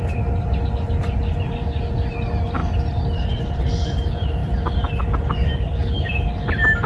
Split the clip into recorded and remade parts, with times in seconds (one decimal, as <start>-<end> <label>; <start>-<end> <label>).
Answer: 0.0-6.9 recorded